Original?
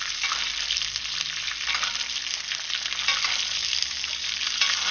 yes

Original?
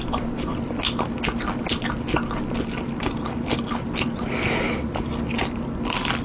yes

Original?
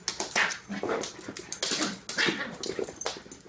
yes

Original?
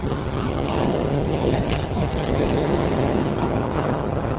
no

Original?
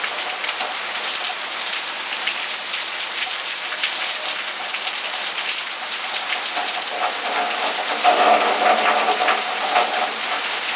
yes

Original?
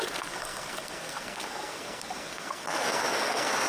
no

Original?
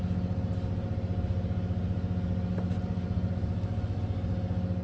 yes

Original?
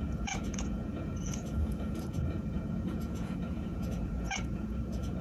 no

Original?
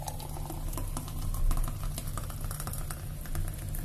yes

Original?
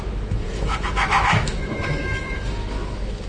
no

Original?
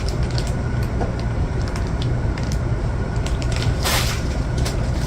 no